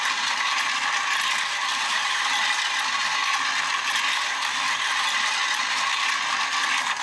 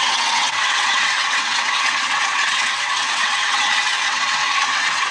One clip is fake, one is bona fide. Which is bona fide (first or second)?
first